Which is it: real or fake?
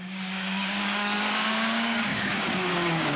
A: fake